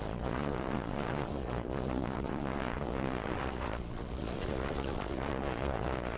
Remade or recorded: remade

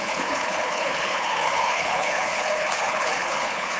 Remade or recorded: remade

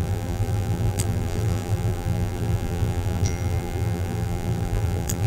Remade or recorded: remade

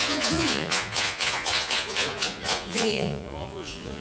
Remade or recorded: remade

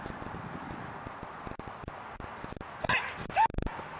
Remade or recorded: recorded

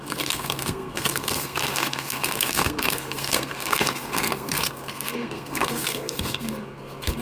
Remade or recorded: remade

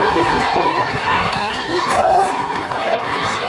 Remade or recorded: remade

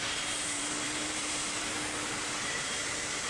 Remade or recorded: remade